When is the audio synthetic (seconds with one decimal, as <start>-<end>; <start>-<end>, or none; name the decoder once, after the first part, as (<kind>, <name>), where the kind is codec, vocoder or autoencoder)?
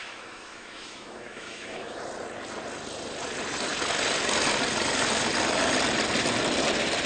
0.0-2.0 (autoencoder, DAC-VAE)